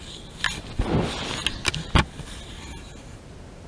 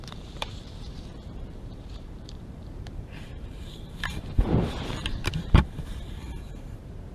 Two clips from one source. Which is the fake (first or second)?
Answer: second